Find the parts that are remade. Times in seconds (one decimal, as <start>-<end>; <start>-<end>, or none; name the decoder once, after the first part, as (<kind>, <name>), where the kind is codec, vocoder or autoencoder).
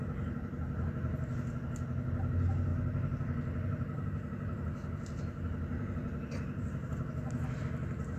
none